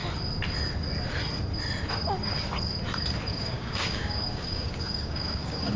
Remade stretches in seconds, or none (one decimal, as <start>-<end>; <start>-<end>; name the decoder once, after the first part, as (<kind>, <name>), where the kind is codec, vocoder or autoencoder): 3.3-5.8 (codec, DAC)